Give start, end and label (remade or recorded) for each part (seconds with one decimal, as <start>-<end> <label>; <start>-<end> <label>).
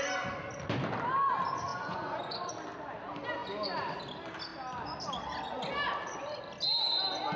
0.0-1.7 recorded; 1.7-2.5 remade; 2.5-7.4 recorded